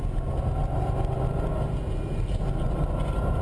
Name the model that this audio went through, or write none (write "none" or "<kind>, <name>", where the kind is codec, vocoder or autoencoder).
none